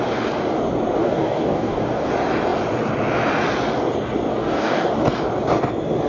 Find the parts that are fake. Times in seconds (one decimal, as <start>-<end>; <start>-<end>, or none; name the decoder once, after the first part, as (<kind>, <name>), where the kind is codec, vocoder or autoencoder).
1.0-2.1 (codec, DAC); 4.4-4.9